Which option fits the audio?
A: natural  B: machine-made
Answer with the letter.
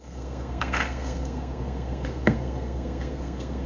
B